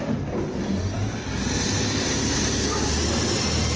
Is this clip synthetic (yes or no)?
no